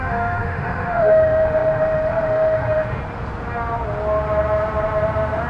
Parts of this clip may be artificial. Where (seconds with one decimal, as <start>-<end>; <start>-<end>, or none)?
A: 0.0-3.0